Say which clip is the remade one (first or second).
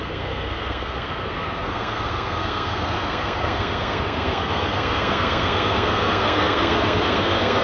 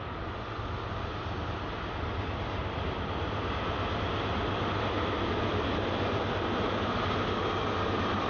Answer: first